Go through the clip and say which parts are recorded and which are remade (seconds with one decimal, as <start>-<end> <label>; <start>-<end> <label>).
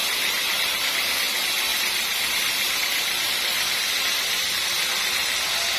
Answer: 0.0-5.8 recorded